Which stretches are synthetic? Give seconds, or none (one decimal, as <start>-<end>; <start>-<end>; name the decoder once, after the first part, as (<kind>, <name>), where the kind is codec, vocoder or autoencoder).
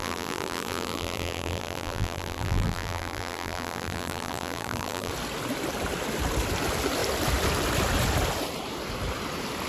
0.0-5.1 (vocoder, BigVGAN v2)